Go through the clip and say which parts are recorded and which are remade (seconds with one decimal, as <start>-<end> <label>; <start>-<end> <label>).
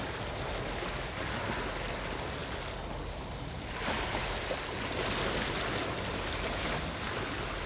0.0-7.7 recorded